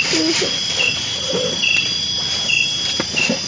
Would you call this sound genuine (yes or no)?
yes